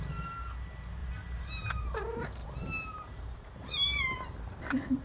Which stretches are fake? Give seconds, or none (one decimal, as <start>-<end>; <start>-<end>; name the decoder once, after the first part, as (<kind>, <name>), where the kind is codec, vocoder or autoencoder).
1.0-2.0 (vocoder, BigVGAN v2); 2.4-4.6